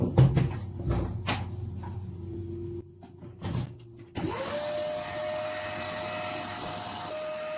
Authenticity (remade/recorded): recorded